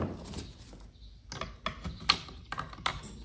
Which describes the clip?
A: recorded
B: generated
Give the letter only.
A